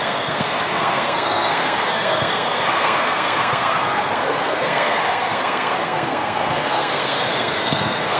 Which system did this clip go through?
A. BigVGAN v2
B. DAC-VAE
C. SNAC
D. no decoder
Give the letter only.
C